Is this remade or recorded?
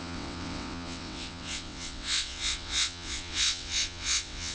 remade